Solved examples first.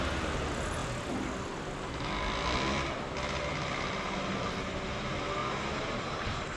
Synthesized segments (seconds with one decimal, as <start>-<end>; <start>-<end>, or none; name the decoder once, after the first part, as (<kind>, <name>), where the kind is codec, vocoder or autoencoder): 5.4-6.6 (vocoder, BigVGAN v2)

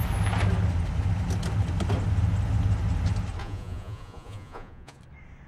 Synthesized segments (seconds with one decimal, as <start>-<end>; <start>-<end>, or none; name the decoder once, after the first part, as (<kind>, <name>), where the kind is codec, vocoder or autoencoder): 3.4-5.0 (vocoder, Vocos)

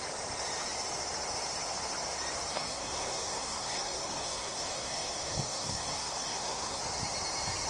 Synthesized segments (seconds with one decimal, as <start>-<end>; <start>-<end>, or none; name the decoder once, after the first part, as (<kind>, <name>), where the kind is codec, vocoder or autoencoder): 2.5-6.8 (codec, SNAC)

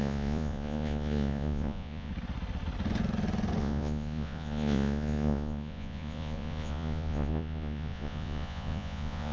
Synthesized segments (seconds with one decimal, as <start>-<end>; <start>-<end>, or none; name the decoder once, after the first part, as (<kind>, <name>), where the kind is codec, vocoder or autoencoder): 0.0-2.1 (vocoder, Vocos); 3.6-9.3